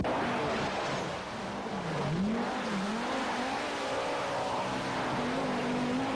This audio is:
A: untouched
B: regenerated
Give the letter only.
A